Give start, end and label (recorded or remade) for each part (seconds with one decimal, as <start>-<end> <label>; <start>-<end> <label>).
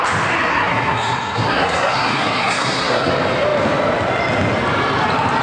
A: 0.0-0.5 recorded; 0.5-3.1 remade; 3.1-5.4 recorded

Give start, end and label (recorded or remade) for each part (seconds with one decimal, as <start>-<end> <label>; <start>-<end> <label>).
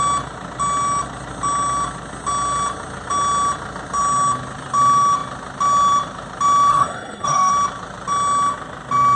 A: 0.0-6.7 recorded; 6.7-7.5 remade; 7.5-9.2 recorded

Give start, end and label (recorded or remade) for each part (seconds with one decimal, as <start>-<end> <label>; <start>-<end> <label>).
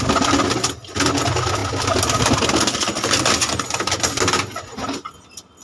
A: 0.0-5.6 recorded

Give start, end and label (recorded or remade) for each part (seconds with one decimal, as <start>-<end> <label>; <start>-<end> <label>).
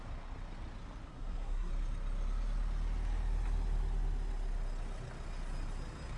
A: 0.0-1.1 recorded; 1.1-1.7 remade; 1.7-6.2 recorded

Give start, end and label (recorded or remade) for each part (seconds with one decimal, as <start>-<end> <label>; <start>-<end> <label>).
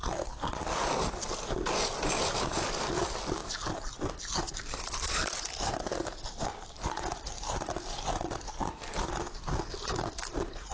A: 0.0-10.7 recorded